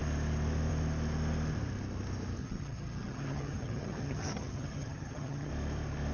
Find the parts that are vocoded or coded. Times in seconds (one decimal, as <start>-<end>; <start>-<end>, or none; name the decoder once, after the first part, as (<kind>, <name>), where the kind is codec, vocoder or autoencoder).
2.4-5.5 (vocoder, HiFi-GAN)

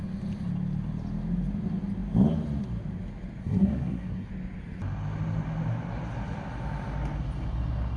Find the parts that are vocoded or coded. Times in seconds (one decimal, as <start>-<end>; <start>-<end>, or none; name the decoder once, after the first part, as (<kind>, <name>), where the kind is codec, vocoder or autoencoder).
3.4-4.3 (codec, SNAC)